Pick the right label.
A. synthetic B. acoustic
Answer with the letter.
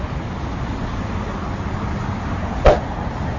B